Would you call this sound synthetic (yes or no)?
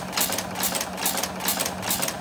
no